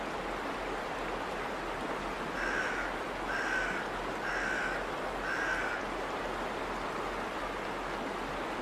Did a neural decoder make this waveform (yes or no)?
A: no